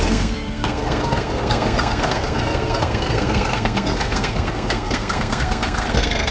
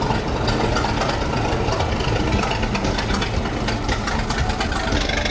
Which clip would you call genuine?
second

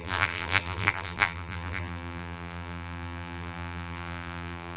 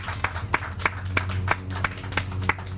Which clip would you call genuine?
second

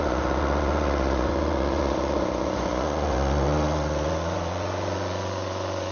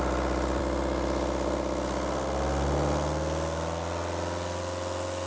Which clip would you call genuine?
second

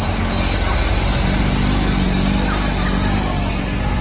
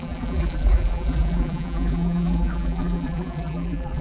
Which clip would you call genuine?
first